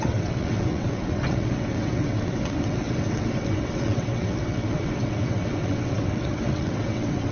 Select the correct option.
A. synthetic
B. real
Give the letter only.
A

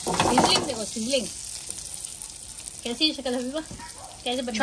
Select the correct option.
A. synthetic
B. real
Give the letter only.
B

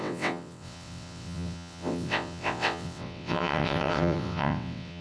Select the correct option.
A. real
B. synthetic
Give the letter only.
B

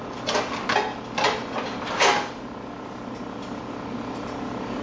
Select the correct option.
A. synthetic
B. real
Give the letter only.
B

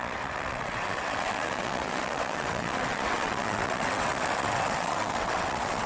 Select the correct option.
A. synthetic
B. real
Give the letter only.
A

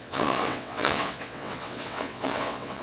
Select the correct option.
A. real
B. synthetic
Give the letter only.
B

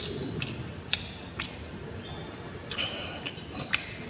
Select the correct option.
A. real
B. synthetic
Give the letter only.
A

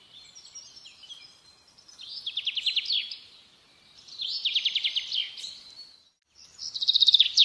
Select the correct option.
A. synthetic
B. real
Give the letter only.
B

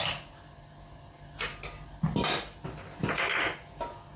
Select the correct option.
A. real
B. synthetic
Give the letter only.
A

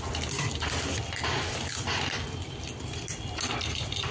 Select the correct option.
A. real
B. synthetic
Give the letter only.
A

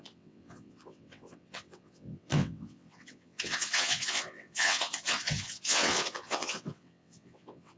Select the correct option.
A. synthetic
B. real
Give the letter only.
A